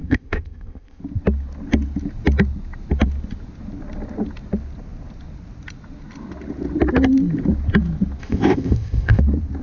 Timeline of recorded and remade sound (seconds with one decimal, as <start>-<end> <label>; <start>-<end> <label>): 0.0-1.0 remade; 1.0-8.2 recorded; 8.2-9.2 remade; 9.2-9.6 recorded